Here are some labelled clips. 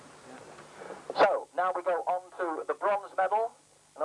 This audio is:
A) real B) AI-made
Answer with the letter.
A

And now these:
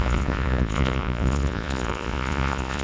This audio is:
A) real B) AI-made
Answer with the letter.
B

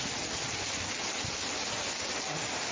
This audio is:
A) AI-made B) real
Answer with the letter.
B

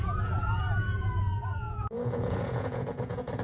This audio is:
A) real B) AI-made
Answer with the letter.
B